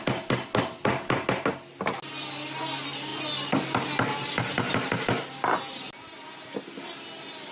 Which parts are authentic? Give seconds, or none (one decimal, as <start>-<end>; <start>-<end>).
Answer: 0.0-7.5